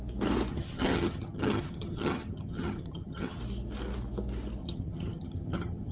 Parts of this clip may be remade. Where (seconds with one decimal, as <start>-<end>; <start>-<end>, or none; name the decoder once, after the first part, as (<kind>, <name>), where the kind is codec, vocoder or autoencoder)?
0.5-3.4 (vocoder, HiFi-GAN); 4.6-5.9

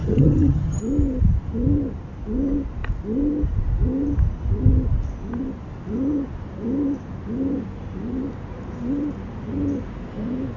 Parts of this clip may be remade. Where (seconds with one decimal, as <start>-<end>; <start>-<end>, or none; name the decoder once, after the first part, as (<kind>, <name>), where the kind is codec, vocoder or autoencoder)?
0.0-0.8 (vocoder, HiFi-GAN)